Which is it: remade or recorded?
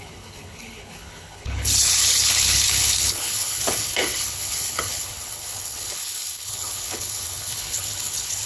remade